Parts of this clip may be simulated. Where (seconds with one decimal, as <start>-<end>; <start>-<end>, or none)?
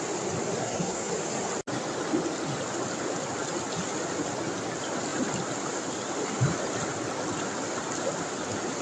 0.6-1.1